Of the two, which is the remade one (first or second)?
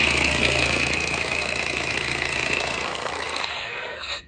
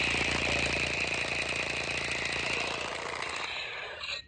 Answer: first